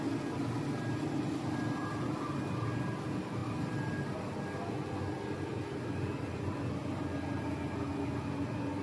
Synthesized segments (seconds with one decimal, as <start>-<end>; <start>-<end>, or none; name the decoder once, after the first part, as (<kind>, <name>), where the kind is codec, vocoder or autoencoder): 1.8-2.4 (vocoder, BigVGAN v2)